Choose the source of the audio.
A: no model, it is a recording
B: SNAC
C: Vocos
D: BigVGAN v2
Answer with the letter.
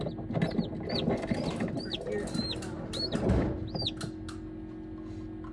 A